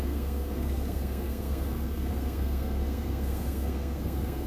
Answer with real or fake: fake